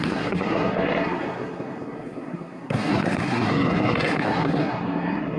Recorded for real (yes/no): no